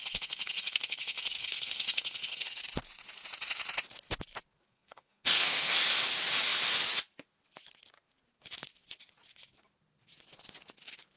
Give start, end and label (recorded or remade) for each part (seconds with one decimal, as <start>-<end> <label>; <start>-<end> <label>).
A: 0.0-2.6 remade; 2.6-4.7 recorded; 4.7-5.7 remade; 5.7-11.2 recorded